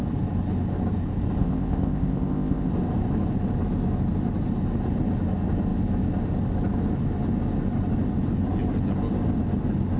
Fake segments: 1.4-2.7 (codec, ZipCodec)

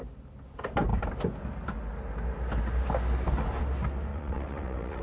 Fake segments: 4.1-5.0 (vocoder, WaveNeXt)

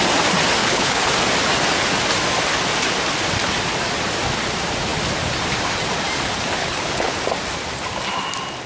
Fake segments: 0.6-1.1 (codec, HILCodec); 6.6-7.2

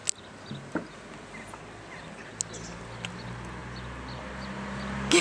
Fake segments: none

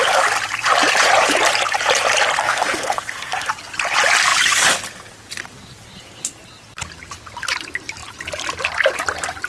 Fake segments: 2.4-3.5 (codec, SNAC)